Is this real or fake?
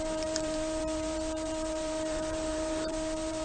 fake